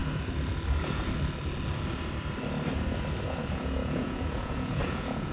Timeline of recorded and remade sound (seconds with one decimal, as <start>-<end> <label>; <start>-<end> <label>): 0.0-3.2 recorded; 3.2-5.3 remade